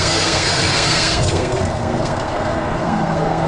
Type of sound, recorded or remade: remade